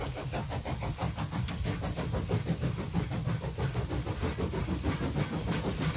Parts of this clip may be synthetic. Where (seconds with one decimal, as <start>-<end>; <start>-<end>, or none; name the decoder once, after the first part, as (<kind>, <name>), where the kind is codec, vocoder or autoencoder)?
none